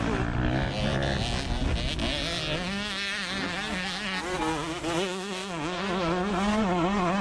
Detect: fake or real real